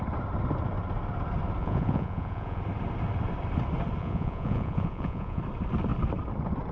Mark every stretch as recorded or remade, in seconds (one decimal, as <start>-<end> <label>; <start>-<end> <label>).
0.0-1.6 recorded; 1.6-2.6 remade; 2.6-4.0 recorded; 4.0-5.4 remade; 5.4-6.7 recorded